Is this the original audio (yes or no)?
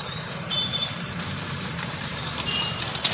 no